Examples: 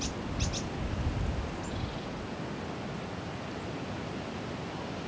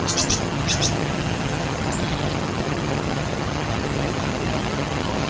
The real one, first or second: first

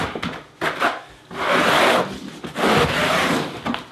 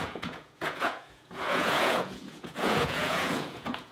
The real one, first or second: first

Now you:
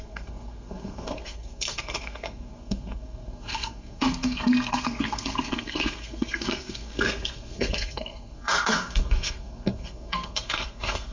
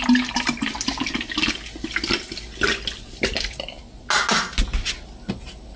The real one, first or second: second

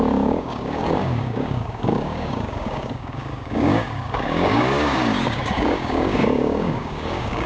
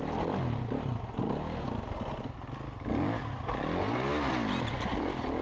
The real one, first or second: second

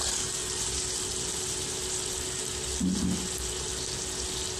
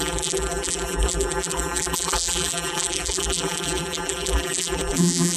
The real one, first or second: first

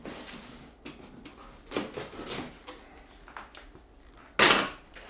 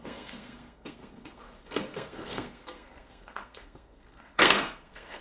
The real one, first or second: first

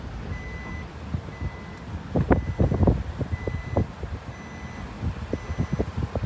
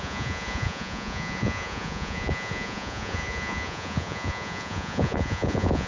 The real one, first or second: first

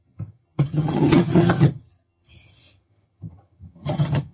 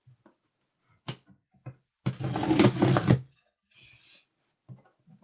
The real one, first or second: second